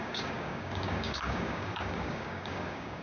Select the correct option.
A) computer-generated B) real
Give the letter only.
A